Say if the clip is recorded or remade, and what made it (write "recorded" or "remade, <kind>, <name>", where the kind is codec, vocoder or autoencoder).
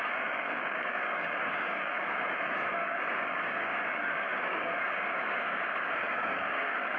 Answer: remade, codec, DAC